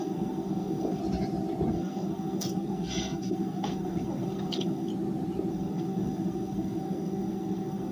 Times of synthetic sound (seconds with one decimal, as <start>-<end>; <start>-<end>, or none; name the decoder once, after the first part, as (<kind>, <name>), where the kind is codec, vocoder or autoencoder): 0.0-1.0 (codec, SNAC); 1.7-4.9; 5.5-7.9